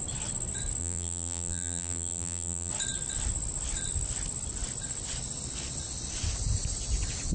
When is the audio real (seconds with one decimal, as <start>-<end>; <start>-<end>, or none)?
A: 0.0-0.8; 2.7-7.3

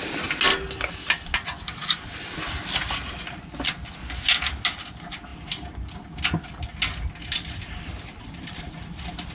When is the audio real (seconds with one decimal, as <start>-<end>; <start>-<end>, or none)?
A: 0.0-1.8; 3.1-5.3; 6.2-9.3

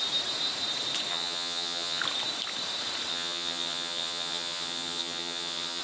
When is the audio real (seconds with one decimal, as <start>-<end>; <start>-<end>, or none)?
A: 0.0-1.1; 2.0-3.1

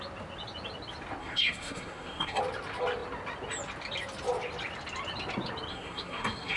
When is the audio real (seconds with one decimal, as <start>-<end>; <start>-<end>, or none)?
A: 0.0-1.2; 2.4-5.7

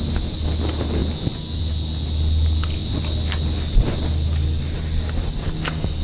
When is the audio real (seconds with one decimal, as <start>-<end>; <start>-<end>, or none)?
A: 0.0-6.0

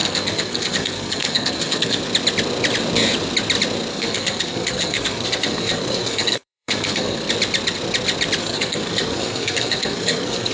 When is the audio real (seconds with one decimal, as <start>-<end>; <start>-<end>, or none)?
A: 2.0-3.9; 7.3-8.4